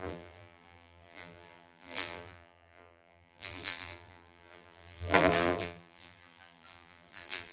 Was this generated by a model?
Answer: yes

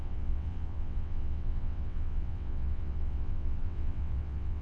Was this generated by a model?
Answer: yes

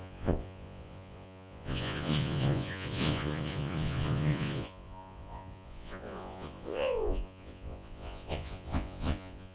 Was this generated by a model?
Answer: yes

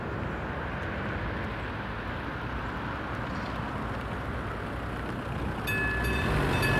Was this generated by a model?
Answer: no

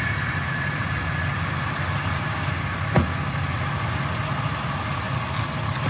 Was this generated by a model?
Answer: no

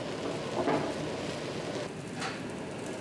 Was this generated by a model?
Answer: no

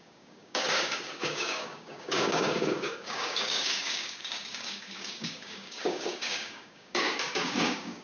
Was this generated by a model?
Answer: yes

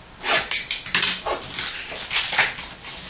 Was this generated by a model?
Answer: no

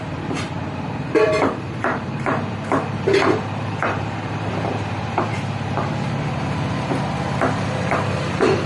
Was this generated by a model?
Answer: yes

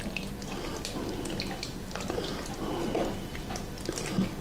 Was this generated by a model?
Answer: no